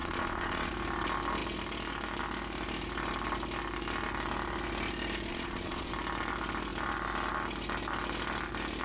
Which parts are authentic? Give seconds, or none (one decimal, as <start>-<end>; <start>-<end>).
0.7-5.3; 5.9-8.8